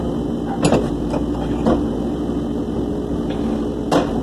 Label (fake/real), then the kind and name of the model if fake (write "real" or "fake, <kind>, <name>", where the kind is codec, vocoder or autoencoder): real